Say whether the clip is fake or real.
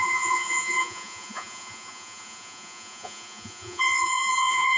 fake